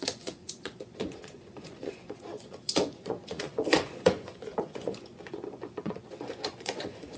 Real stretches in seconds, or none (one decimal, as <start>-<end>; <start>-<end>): none